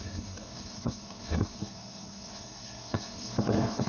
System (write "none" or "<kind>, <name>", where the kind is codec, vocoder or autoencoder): codec, SNAC